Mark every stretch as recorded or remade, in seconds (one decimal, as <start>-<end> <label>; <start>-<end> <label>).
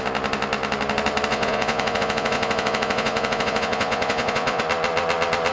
0.0-1.3 recorded; 1.3-4.6 remade; 4.6-5.5 recorded